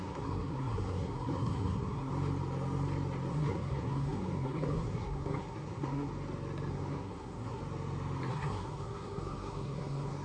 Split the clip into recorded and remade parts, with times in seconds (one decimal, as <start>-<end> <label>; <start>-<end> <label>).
0.0-2.1 remade; 2.1-3.3 recorded; 3.3-6.1 remade; 6.1-6.7 recorded; 6.7-7.6 remade; 7.6-8.3 recorded; 8.3-10.2 remade